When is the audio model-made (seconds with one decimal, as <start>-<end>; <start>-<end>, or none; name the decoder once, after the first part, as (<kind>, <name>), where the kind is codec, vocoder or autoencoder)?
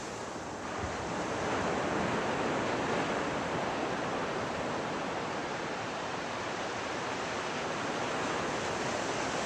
5.4-7.3 (vocoder, BigVGAN v2)